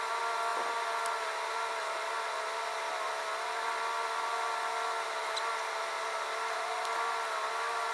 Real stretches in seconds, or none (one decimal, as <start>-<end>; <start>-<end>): 0.0-7.9

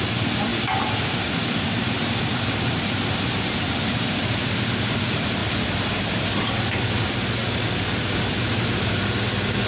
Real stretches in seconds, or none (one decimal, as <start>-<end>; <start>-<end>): 0.0-0.5; 4.5-5.4; 6.8-9.7